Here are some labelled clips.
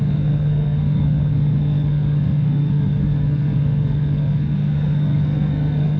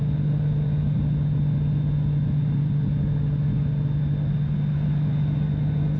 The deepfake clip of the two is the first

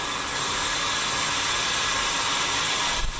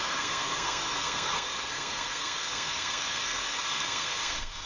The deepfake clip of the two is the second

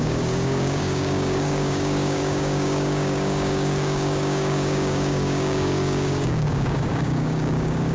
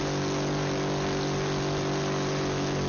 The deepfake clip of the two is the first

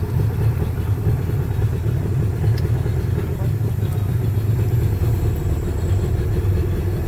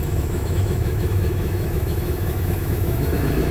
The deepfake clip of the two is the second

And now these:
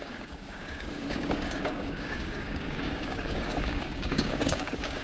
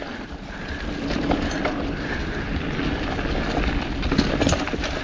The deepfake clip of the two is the first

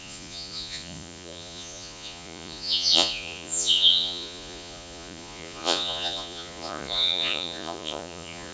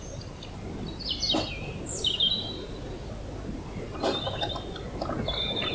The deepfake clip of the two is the first